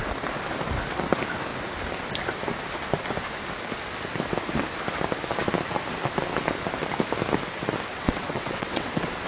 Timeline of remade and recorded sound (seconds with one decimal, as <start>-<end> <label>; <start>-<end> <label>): 0.0-7.9 recorded; 7.9-9.3 remade